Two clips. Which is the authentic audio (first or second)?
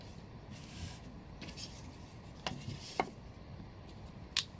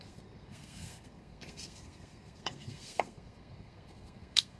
first